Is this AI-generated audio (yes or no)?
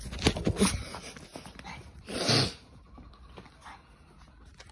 no